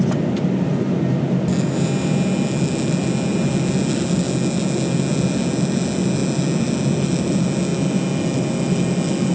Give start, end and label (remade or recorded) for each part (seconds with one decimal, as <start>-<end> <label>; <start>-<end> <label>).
0.0-9.3 recorded